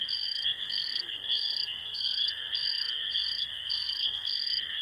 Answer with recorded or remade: remade